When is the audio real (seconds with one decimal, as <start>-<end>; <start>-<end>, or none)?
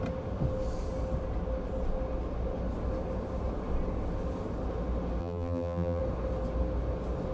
0.0-5.2; 6.0-7.3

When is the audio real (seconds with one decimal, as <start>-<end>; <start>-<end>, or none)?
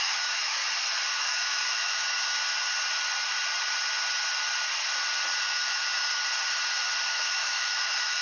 0.6-1.1; 2.4-5.4; 6.2-7.1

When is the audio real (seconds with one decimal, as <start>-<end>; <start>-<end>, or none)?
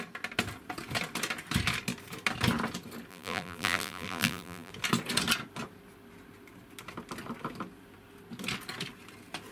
0.0-3.1; 4.7-9.5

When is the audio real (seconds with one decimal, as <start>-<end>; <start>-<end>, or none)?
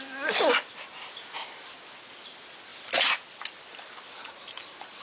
0.0-5.0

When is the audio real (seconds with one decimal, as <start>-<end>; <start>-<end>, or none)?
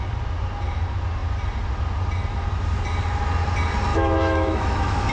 0.0-3.9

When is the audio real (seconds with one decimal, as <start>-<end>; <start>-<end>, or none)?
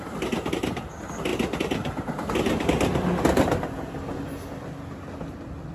0.0-5.7